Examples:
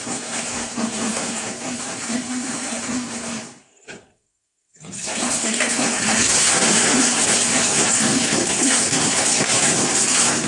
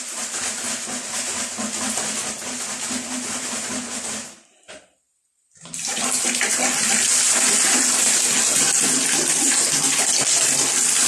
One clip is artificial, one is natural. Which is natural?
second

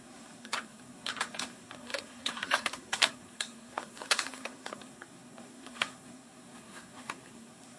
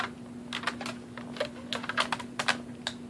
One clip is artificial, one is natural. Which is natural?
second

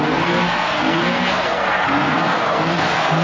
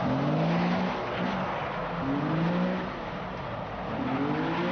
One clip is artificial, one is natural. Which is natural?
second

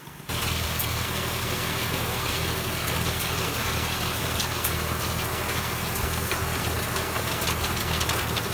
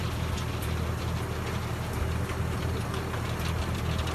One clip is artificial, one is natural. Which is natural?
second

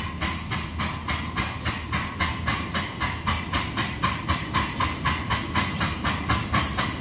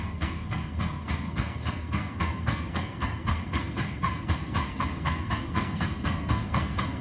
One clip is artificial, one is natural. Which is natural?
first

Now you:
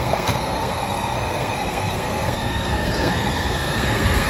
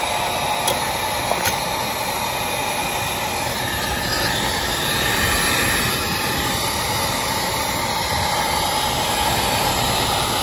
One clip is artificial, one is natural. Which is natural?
second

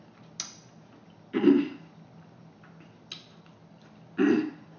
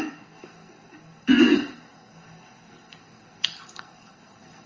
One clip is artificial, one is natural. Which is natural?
first